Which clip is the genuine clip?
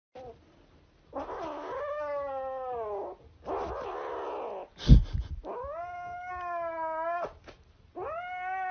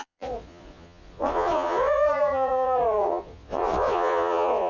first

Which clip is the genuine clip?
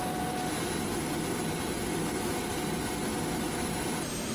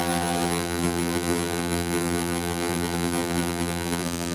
first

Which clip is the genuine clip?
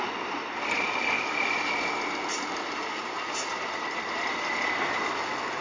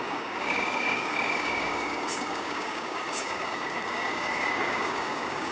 first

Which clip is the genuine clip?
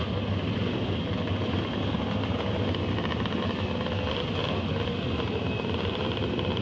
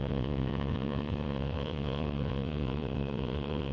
first